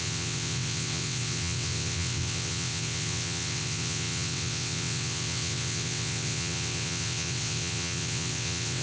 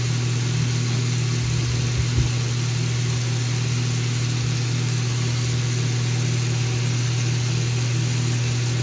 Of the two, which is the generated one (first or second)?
first